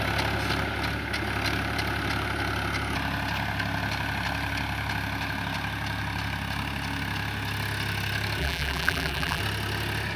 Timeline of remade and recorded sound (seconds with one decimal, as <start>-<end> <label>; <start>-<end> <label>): 0.0-8.4 recorded; 8.4-9.4 remade; 9.4-10.2 recorded